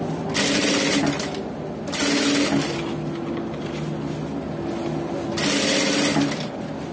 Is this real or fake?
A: real